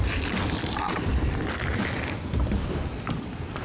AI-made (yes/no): yes